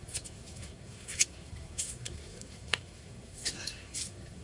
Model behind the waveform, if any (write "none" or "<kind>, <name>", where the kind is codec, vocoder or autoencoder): codec, SNAC